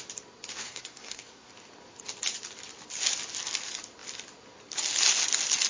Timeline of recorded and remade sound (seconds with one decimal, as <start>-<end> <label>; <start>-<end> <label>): 0.0-0.6 recorded; 0.6-1.5 remade; 1.5-5.7 recorded